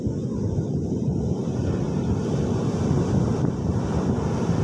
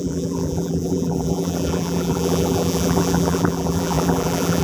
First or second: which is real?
first